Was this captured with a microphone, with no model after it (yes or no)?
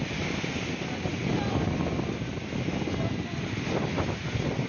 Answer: yes